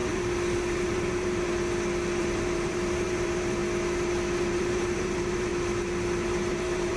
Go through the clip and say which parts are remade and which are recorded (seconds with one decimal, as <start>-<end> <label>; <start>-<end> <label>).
0.0-1.5 remade; 1.5-2.2 recorded; 2.2-3.6 remade; 3.6-4.5 recorded; 4.5-5.5 remade; 5.5-6.2 recorded; 6.2-7.0 remade